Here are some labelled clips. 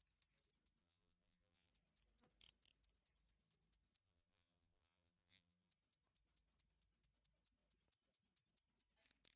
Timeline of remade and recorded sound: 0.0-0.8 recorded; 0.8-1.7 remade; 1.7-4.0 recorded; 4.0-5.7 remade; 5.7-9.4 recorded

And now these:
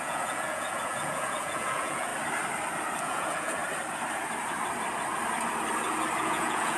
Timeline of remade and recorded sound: 0.0-2.1 remade; 2.1-3.0 recorded; 3.0-3.6 remade; 3.6-6.2 recorded; 6.2-6.8 remade